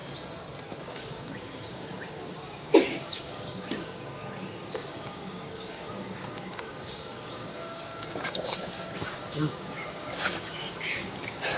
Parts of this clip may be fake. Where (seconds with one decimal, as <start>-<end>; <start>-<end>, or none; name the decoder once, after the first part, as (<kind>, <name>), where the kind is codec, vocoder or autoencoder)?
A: 0.8-11.6 (codec, DAC)

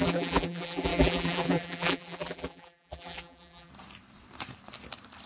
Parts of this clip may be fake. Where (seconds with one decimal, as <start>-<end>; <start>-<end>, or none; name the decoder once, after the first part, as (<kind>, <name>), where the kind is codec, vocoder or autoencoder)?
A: 0.0-3.7 (vocoder, BigVGAN v2)

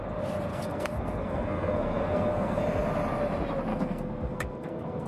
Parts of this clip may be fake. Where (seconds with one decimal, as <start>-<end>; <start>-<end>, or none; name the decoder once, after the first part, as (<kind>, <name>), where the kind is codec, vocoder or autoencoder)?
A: 0.5-2.6 (codec, SNAC); 3.7-5.1

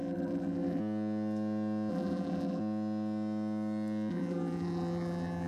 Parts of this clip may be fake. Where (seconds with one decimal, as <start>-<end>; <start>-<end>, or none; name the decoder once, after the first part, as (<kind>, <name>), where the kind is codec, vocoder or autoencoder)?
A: 0.0-0.8 (vocoder, BigVGAN v2); 1.9-2.6; 4.1-5.5

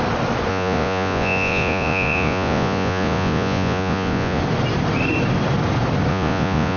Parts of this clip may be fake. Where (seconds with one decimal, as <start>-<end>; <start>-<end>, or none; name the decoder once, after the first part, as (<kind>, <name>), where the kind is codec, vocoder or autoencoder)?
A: 0.5-4.4 (vocoder, Vocos); 6.1-6.8

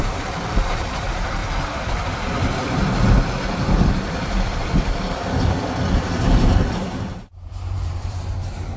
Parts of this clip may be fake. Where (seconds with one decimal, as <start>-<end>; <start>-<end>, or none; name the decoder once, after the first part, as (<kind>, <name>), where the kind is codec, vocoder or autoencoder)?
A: 0.0-1.4 (vocoder, BigVGAN v2); 6.7-8.8

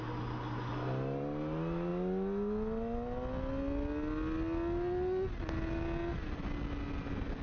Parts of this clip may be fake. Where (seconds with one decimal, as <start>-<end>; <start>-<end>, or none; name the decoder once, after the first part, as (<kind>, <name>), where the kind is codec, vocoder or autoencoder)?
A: none